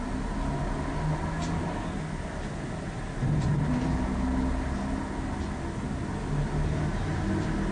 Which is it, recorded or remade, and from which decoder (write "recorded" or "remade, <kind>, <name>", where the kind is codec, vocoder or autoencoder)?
recorded